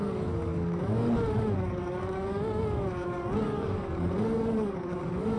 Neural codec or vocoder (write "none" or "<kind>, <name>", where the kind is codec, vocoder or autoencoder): codec, DAC